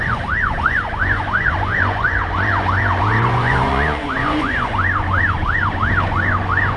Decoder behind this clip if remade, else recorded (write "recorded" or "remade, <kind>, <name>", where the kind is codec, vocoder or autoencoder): remade, vocoder, Vocos